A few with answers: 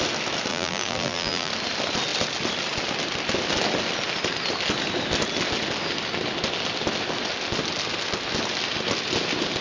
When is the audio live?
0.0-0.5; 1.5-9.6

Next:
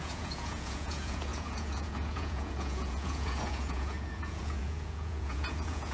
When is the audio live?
none